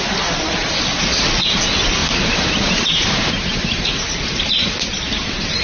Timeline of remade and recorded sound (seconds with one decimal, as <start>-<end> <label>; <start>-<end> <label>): 0.0-2.0 recorded; 2.0-4.7 remade; 4.7-5.6 recorded